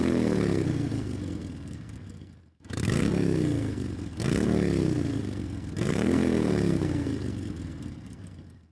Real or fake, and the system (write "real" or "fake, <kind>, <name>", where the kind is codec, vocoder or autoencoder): fake, codec, SNAC